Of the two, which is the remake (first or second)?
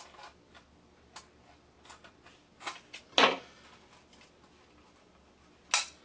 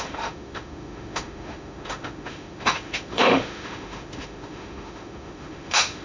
second